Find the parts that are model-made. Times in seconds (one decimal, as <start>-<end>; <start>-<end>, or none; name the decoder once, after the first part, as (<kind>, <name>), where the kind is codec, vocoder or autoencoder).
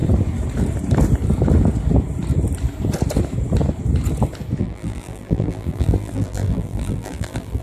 4.6-7.6 (vocoder, BigVGAN v2)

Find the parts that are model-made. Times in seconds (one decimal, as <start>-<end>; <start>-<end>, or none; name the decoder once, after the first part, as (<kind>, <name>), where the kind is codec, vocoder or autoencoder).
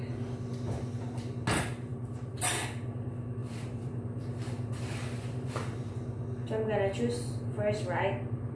1.9-2.5 (vocoder, BigVGAN v2); 3.4-5.9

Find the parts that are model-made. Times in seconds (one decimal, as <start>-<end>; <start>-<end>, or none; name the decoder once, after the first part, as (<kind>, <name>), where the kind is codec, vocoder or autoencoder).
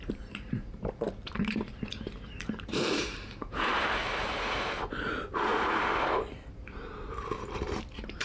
0.0-3.7 (vocoder, BigVGAN v2); 4.2-5.5; 6.5-8.2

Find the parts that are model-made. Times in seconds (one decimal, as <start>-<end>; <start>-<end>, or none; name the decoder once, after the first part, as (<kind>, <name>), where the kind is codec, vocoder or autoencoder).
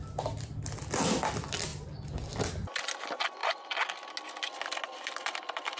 none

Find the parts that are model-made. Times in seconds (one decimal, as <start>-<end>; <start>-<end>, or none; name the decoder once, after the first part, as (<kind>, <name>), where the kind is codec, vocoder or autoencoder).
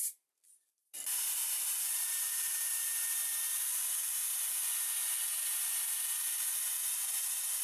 0.0-7.6 (vocoder, BigVGAN v2)